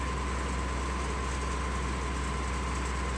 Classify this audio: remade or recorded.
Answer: recorded